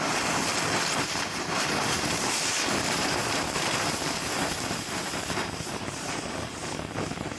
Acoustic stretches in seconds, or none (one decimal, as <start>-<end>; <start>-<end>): 0.5-1.0